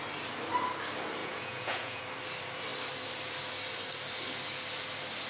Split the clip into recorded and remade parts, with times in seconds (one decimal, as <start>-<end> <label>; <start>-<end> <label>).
0.0-1.2 recorded; 1.2-2.0 remade; 2.0-5.3 recorded